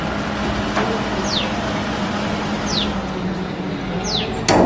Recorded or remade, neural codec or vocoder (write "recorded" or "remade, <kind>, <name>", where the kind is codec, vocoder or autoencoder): recorded